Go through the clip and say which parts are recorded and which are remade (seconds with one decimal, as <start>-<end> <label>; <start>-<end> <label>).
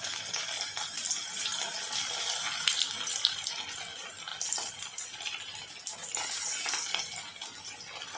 0.0-1.5 recorded; 1.5-3.0 remade; 3.0-4.3 recorded; 4.3-5.4 remade; 5.4-8.2 recorded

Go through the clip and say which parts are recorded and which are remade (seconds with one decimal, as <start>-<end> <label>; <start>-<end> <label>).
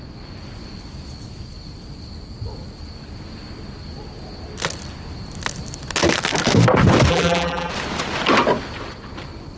0.0-7.1 recorded; 7.1-7.7 remade; 7.7-9.6 recorded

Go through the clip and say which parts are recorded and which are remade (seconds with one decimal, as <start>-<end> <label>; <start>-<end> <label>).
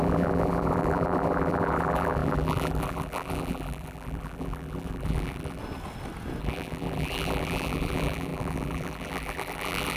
0.0-5.6 remade; 5.6-6.4 recorded; 6.4-10.0 remade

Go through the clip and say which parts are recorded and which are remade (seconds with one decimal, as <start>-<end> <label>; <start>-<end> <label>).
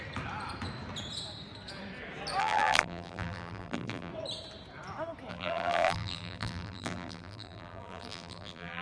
0.0-2.4 recorded; 2.4-4.1 remade; 4.1-5.3 recorded; 5.3-8.8 remade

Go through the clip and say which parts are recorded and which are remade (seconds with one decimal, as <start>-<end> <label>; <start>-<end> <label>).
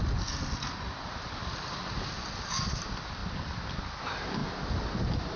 0.0-5.4 recorded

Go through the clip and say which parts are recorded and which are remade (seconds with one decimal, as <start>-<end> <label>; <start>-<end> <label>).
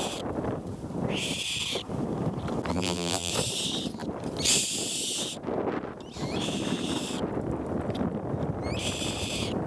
0.0-2.7 recorded; 2.7-3.3 remade; 3.3-9.7 recorded